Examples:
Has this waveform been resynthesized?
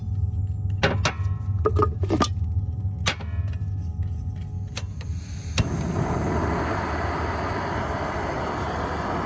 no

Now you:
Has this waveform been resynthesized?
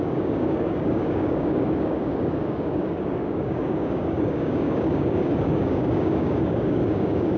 yes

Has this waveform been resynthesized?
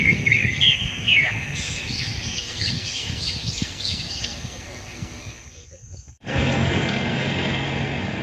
yes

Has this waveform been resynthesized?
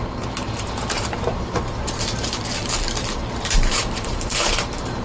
yes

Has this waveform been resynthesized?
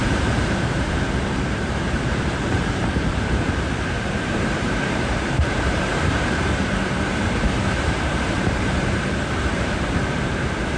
yes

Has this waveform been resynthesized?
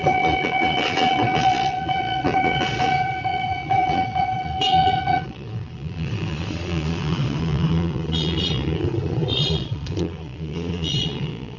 yes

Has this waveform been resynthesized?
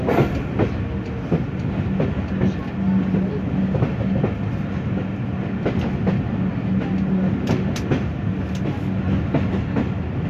no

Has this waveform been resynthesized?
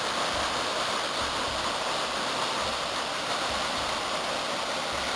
no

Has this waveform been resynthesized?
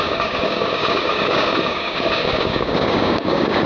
yes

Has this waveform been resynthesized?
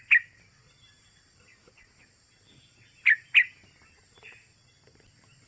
no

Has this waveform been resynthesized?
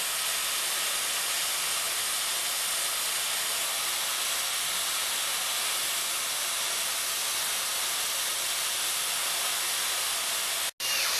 no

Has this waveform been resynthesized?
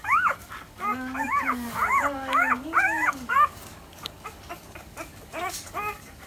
yes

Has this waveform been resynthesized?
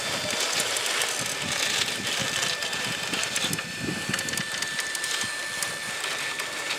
no